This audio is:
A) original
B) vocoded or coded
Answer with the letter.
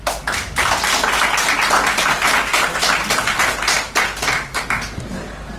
A